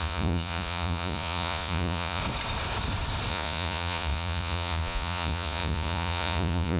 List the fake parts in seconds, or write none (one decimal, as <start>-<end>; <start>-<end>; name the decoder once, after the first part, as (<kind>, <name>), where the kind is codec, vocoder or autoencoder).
0.0-2.2 (vocoder, Vocos); 3.3-6.8